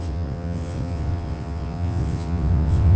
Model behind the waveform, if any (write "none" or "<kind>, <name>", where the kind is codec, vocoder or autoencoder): vocoder, WaveNeXt